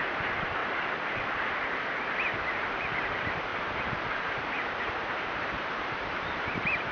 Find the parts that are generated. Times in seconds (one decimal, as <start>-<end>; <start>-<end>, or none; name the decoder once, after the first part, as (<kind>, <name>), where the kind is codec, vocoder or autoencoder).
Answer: 0.0-0.6 (vocoder, BigVGAN v2); 1.4-3.5; 4.2-6.9

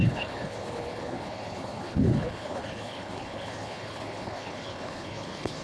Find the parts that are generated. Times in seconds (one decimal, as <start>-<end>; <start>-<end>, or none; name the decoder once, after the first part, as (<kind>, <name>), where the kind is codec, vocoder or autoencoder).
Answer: 0.0-5.6 (codec, HILCodec)

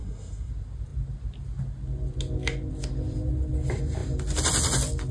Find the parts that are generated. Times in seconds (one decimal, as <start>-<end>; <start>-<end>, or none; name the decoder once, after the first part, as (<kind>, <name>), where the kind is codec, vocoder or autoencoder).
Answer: 0.0-0.5 (codec, SNAC)

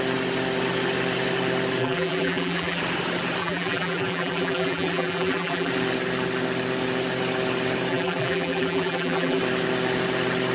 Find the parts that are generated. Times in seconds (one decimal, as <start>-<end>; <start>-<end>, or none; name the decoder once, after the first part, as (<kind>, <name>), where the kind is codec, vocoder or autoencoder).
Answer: 1.8-2.8 (vocoder, BigVGAN v2); 3.4-5.7; 7.9-9.4

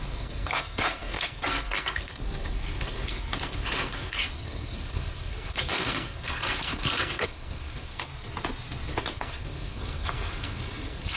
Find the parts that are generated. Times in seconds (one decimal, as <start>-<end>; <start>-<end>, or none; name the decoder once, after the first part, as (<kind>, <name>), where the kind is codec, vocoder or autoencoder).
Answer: 0.0-8.1 (codec, SNAC); 9.0-11.2

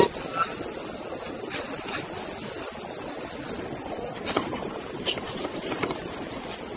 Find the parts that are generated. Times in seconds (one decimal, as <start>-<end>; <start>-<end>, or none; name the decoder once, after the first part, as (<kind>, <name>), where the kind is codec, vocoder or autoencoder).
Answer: 4.5-6.2 (vocoder, BigVGAN v2)

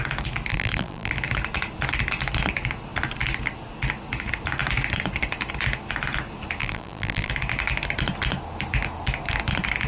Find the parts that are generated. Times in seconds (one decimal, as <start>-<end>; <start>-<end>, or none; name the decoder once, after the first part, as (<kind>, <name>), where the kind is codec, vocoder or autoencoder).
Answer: 0.5-1.1 (vocoder, BigVGAN v2); 6.6-7.3